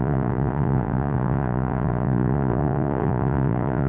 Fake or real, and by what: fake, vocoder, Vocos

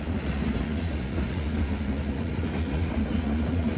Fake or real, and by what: fake, vocoder, Vocos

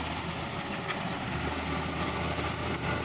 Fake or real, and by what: real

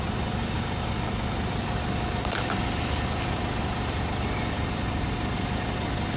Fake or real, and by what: real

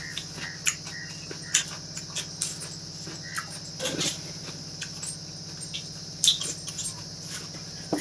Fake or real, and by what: real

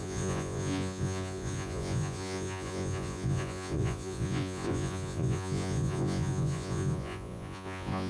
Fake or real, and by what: fake, vocoder, Vocos